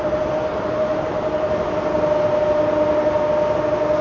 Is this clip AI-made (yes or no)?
no